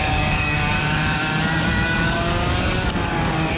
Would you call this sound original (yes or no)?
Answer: no